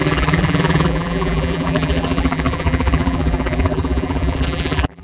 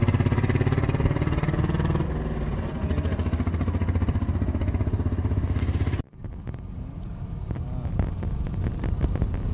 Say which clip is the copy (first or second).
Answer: first